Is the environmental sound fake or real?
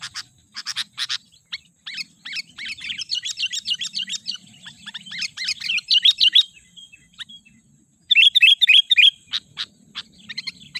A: fake